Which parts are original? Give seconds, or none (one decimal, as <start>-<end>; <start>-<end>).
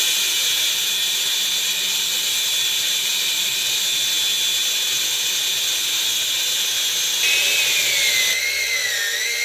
0.0-1.9; 3.5-9.4